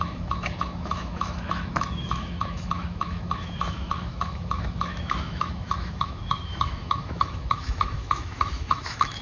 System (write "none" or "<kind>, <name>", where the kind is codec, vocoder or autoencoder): autoencoder, DAC-VAE